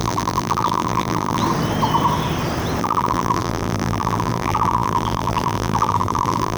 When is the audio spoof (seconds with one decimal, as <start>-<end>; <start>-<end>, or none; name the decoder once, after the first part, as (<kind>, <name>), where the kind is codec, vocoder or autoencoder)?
0.0-1.4 (vocoder, BigVGAN v2); 2.8-6.6